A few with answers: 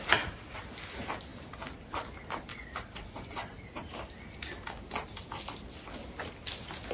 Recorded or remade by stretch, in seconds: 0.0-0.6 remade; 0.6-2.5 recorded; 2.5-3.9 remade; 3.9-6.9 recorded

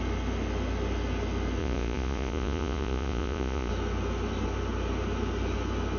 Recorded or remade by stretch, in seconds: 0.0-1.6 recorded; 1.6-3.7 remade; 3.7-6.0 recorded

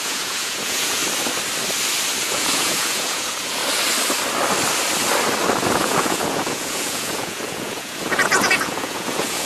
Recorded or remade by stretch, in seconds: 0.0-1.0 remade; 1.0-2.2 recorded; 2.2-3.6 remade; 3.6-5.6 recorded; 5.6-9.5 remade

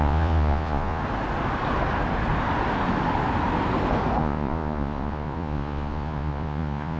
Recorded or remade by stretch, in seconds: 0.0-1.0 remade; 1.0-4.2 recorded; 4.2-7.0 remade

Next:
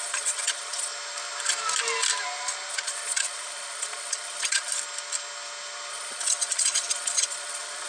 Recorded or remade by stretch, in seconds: 0.0-0.9 remade; 0.9-2.7 recorded; 2.7-4.7 remade; 4.7-5.9 recorded; 5.9-7.9 remade

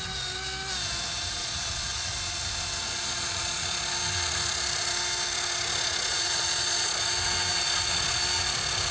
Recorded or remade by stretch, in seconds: 0.0-1.4 recorded; 1.4-2.2 remade; 2.2-2.9 recorded; 2.9-3.8 remade; 3.8-5.7 recorded; 5.7-7.1 remade; 7.1-7.5 recorded; 7.5-8.2 remade; 8.2-8.9 recorded